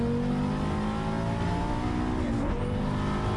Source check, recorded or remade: recorded